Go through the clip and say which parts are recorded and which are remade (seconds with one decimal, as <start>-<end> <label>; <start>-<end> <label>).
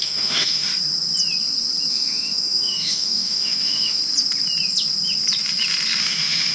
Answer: 0.0-0.7 remade; 0.7-1.9 recorded; 1.9-4.0 remade; 4.0-6.0 recorded; 6.0-6.5 remade